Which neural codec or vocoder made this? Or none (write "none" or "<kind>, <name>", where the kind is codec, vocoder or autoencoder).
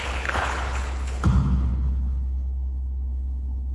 codec, HILCodec